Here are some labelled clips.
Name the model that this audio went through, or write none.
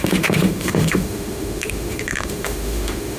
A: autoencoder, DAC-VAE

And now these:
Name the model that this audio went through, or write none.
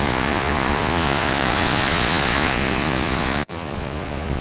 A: vocoder, Vocos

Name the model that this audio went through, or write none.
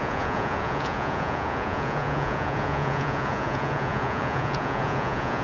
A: vocoder, Vocos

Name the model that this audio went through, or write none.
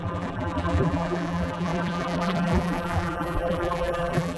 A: vocoder, BigVGAN v2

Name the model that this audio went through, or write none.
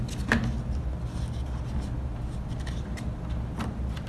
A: none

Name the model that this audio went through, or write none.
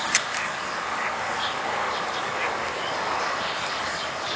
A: codec, DAC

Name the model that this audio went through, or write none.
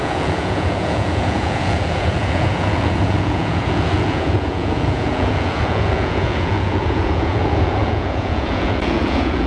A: vocoder, Vocos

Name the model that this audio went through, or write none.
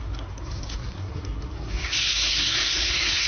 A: codec, SNAC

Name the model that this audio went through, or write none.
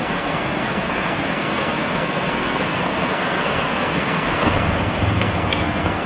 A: codec, SNAC